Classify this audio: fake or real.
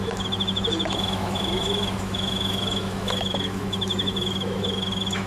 fake